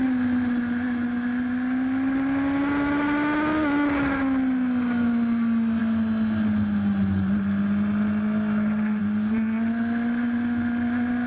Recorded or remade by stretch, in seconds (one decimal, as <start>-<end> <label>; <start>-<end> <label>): 0.0-11.3 recorded